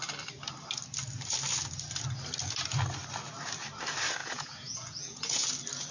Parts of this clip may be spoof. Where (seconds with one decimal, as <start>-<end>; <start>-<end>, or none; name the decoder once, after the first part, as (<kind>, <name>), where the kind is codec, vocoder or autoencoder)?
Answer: 4.2-5.5 (vocoder, Vocos)